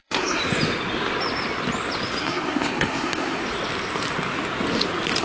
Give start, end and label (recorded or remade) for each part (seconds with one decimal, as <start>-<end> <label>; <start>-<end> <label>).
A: 0.0-0.4 remade; 0.4-2.2 recorded; 2.2-3.4 remade; 3.4-5.2 recorded